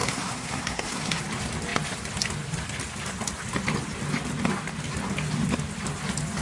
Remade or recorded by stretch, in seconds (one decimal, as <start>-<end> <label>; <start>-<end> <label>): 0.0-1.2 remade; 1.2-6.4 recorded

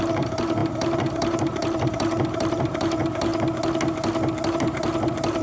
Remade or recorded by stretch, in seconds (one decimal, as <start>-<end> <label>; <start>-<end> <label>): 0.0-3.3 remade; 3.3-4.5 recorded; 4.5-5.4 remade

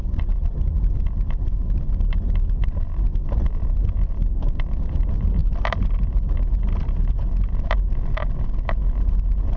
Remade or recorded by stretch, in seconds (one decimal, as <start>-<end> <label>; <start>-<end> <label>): 0.0-9.6 recorded